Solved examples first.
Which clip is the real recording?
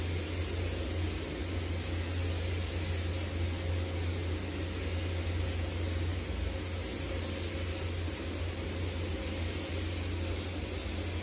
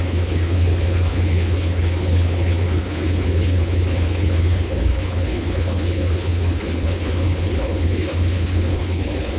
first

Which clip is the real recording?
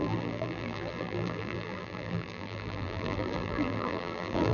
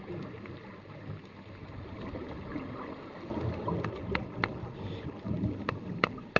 second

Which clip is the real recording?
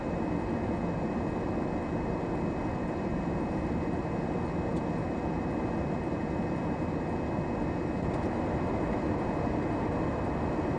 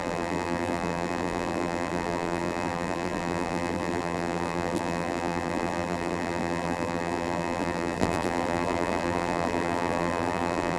first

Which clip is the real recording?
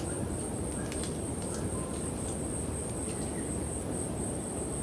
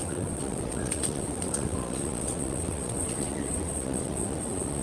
first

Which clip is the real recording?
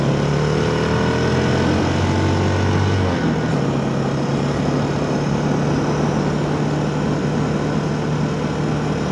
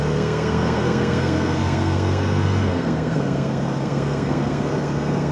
first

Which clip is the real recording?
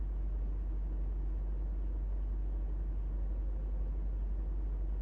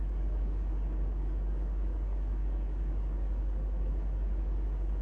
first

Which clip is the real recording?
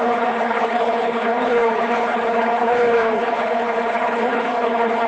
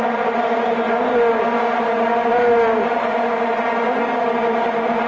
second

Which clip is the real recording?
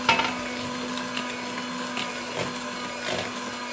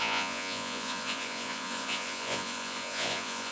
first